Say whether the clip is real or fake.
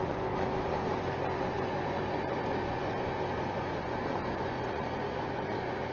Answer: fake